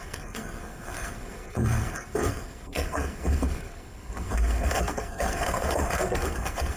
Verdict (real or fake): fake